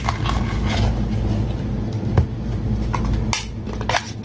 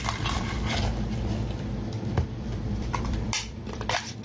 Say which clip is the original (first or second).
first